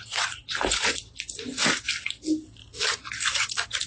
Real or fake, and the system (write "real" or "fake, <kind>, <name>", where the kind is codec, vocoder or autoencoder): real